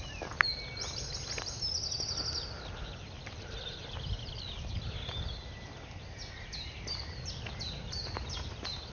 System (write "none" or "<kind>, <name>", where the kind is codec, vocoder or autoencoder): none